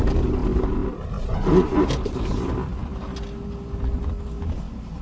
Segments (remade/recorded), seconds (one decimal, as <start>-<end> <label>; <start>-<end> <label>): 0.0-5.0 recorded